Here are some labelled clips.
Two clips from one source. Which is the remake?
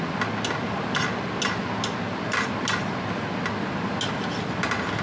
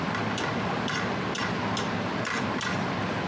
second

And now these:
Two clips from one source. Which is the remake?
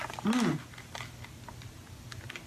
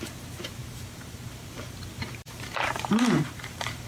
second